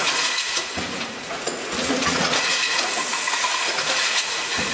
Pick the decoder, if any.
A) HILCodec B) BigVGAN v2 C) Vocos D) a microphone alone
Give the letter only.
C